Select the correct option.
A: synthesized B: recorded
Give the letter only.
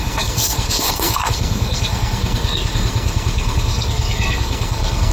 A